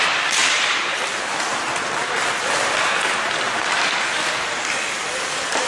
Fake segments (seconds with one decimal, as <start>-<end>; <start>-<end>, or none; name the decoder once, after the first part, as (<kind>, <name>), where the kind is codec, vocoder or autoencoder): 0.4-0.9 (vocoder, BigVGAN v2)